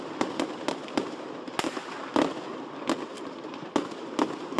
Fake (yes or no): no